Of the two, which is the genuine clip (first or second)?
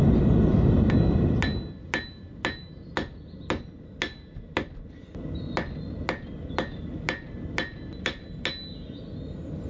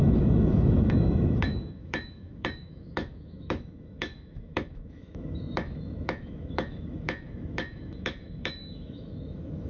first